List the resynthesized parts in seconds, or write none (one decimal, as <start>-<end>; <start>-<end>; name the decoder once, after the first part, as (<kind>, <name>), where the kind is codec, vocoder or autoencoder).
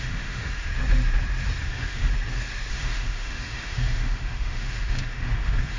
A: 0.0-0.7 (autoencoder, DAC-VAE); 1.6-2.1; 2.7-5.8